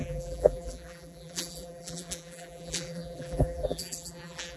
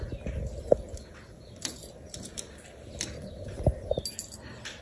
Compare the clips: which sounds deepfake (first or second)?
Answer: first